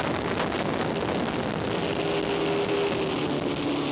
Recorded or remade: recorded